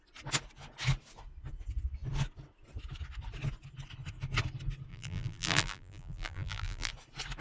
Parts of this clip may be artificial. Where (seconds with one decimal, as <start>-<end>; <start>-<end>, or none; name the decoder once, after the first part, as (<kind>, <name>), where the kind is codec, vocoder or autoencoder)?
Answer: 4.9-6.9 (vocoder, BigVGAN v2)